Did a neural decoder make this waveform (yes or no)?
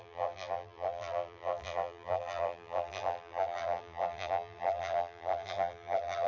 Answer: yes